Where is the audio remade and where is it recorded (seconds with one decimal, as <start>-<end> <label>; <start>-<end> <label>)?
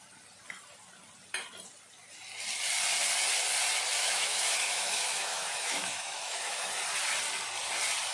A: 0.0-4.0 recorded; 4.0-6.7 remade; 6.7-8.1 recorded